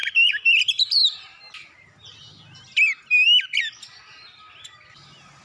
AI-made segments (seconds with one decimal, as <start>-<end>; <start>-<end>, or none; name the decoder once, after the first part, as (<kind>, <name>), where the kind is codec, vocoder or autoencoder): none